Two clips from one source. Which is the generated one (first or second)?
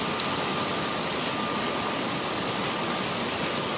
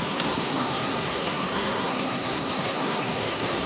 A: second